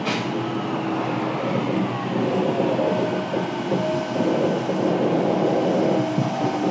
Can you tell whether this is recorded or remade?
recorded